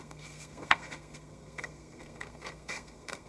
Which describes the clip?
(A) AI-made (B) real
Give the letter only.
A